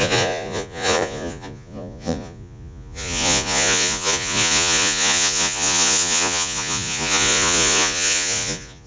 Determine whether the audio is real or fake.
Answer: fake